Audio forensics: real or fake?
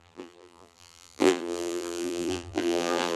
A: fake